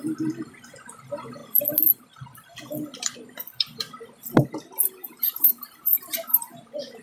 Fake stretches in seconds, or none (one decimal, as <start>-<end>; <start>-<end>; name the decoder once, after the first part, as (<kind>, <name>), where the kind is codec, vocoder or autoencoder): 5.0-7.0 (vocoder, BigVGAN v2)